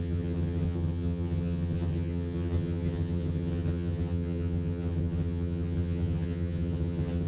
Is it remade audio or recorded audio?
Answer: remade